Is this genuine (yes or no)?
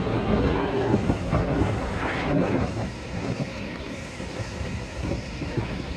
no